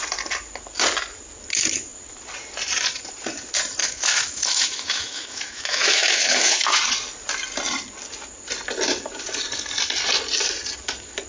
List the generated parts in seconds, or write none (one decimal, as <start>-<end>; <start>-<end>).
3.8-6.8